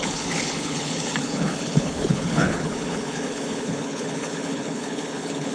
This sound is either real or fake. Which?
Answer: fake